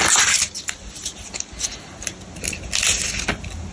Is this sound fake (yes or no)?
no